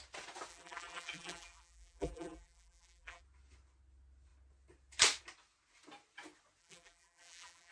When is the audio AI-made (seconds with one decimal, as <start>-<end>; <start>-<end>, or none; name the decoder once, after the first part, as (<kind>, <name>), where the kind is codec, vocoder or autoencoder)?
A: 0.5-3.2 (vocoder, BigVGAN v2); 6.6-7.7

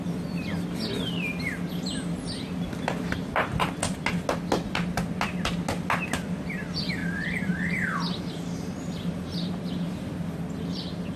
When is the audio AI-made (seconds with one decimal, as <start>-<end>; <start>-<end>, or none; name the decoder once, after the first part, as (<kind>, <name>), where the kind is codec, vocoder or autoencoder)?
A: 7.0-9.5 (vocoder, BigVGAN v2)